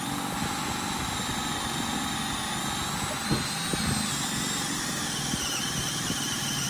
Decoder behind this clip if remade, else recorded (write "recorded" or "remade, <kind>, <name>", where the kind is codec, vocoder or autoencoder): recorded